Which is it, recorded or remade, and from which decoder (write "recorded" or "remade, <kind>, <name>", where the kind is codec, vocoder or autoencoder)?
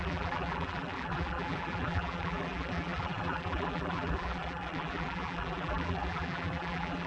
remade, vocoder, BigVGAN v2